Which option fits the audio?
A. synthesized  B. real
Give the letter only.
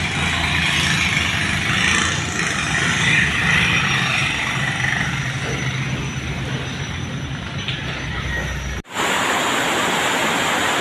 B